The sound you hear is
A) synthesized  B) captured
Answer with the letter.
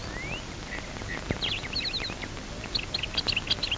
B